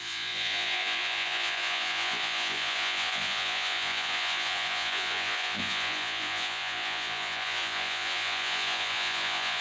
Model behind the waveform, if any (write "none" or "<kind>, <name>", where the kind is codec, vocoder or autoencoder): vocoder, Vocos